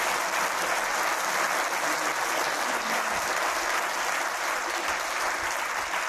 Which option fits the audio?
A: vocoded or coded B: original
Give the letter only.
B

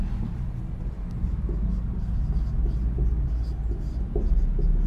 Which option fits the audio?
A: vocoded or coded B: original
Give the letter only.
B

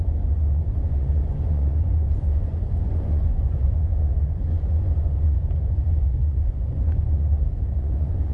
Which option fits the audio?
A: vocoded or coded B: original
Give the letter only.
A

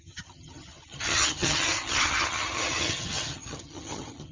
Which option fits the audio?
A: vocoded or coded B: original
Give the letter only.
A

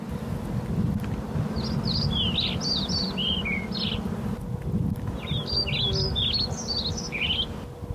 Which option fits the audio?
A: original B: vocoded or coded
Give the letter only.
A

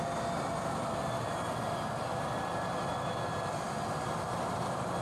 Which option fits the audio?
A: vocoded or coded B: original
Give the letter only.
B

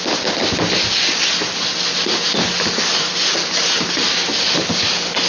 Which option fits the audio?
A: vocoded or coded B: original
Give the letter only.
B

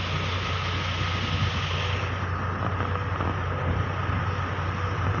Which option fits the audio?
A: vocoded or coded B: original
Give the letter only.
B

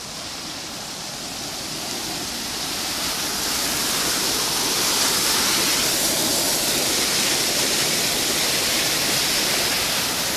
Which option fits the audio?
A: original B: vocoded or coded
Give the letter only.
A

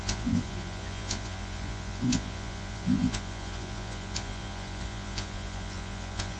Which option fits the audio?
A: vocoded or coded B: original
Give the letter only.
A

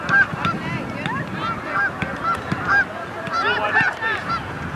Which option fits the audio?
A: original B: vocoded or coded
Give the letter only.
A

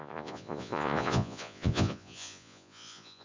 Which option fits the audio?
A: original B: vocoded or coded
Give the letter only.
B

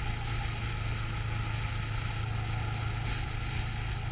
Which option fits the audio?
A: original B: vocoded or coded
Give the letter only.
A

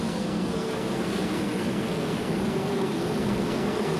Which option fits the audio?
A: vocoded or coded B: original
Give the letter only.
A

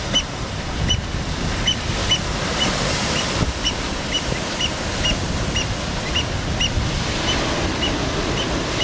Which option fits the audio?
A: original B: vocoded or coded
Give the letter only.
A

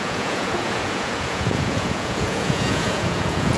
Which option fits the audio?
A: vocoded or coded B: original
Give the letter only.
A